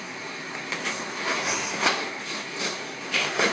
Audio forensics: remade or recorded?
remade